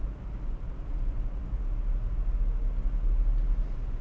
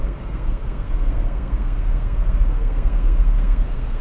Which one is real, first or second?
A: first